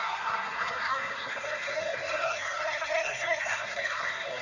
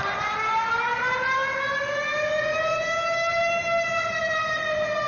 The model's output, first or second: first